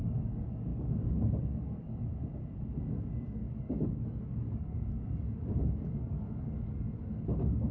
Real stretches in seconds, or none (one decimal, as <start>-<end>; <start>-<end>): 2.1-3.3